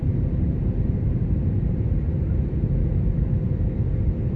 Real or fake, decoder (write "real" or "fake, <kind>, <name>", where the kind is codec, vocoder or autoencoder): real